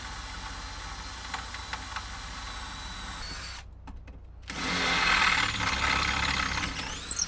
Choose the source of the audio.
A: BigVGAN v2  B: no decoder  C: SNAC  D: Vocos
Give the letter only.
B